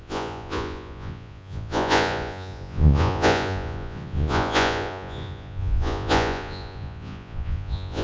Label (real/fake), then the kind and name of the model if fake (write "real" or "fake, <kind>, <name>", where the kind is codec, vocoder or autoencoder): fake, vocoder, Vocos